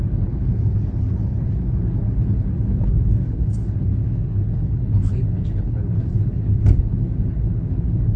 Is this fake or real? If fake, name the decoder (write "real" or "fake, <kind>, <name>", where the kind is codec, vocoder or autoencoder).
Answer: fake, codec, HILCodec